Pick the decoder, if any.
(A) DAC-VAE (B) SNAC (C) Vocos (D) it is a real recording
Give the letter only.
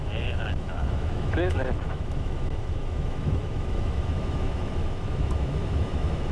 A